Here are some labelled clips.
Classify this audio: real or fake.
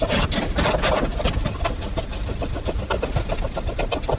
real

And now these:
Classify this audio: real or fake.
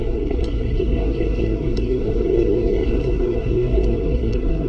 fake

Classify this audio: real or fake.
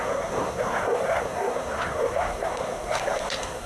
fake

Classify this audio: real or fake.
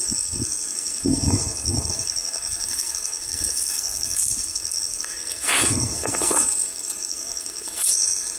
fake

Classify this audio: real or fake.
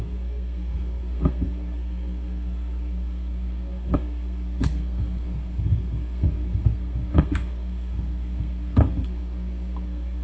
fake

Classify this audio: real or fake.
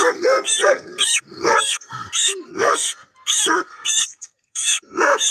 fake